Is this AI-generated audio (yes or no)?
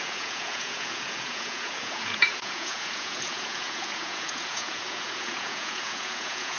yes